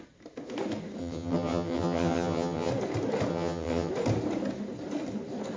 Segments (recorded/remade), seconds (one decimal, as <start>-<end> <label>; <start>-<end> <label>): 0.0-1.0 recorded; 1.0-2.7 remade; 2.7-3.3 recorded; 3.3-3.9 remade; 3.9-5.6 recorded